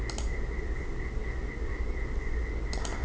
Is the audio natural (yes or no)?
yes